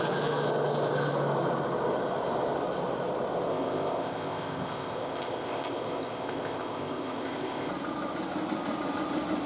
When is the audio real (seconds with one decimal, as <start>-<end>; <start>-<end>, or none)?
0.0-3.5; 7.7-9.5